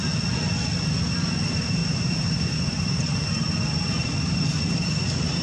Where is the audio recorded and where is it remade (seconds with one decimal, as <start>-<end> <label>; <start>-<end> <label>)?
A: 0.0-1.8 recorded; 1.8-4.6 remade; 4.6-5.4 recorded